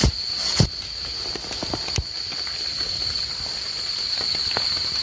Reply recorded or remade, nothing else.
recorded